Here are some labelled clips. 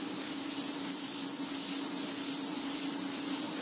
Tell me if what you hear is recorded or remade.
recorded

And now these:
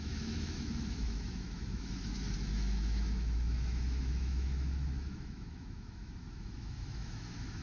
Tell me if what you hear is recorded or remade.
remade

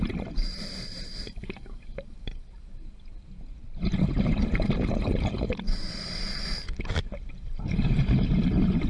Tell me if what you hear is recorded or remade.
remade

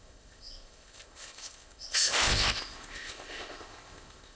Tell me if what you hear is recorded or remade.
remade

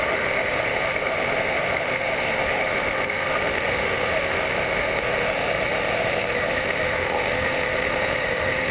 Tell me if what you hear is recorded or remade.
remade